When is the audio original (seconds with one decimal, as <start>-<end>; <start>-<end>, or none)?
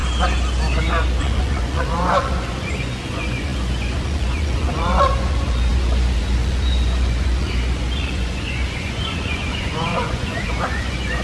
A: 0.0-1.2